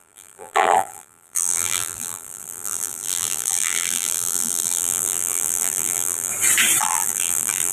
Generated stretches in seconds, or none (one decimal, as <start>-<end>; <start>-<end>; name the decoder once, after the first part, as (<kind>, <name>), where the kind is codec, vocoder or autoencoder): 0.0-6.3 (vocoder, BigVGAN v2); 6.8-7.7